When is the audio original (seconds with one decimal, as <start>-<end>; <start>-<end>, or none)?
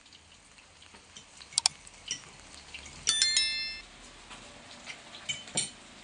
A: 0.0-6.0